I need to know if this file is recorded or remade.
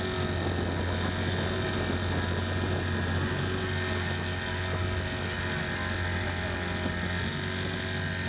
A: recorded